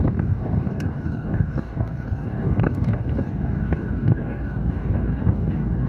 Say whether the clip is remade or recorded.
remade